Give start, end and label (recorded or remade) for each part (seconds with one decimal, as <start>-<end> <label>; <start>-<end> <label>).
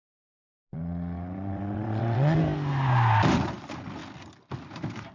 0.0-0.7 recorded; 0.7-2.4 remade; 2.4-5.1 recorded